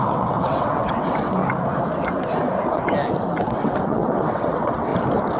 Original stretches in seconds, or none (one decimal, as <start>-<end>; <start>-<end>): 1.4-3.4; 4.9-5.4